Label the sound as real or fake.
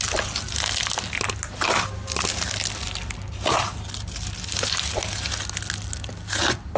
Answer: real